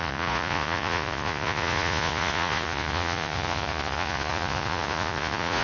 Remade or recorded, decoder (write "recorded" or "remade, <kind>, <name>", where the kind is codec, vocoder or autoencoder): remade, vocoder, Vocos